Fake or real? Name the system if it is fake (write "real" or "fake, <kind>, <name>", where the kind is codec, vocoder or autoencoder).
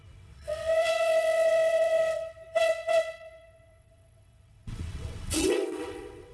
fake, vocoder, WaveNeXt